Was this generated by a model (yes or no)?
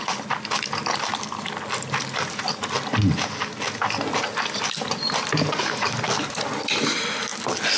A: no